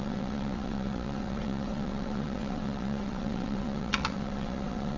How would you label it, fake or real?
fake